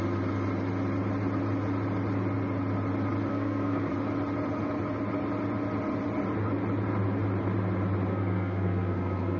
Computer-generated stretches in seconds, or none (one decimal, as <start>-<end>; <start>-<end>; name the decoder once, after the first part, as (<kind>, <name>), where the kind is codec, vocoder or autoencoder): 3.3-3.9 (codec, SNAC); 8.1-9.4